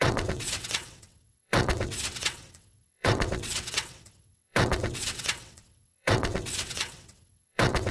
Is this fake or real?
fake